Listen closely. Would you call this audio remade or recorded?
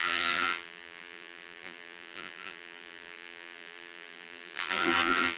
remade